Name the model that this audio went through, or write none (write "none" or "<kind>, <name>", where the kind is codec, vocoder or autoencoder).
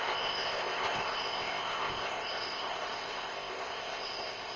codec, ZipCodec